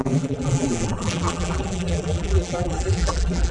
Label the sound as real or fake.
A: fake